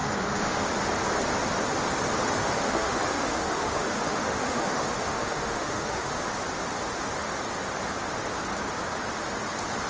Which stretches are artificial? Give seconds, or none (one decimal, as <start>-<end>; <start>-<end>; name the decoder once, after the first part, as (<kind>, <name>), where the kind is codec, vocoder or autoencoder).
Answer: 0.0-0.7 (autoencoder, DAC-VAE); 2.4-6.3